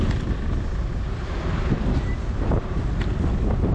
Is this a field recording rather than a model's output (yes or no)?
yes